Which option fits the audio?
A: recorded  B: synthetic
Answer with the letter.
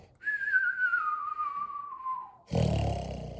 A